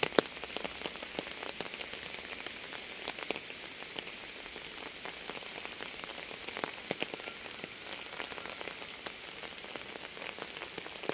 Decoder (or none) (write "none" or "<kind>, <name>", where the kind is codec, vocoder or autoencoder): none